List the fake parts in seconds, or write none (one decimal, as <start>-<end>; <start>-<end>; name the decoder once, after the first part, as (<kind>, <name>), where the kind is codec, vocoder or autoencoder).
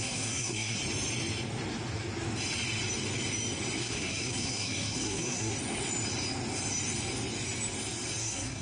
0.0-0.8 (codec, SNAC); 3.8-5.5; 8.2-8.6